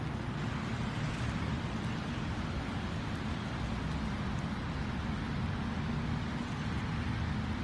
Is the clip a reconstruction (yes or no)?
no